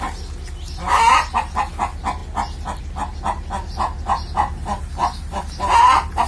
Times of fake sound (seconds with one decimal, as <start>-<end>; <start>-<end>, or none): 5.0-5.8